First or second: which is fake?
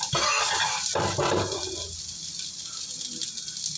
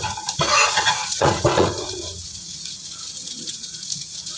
second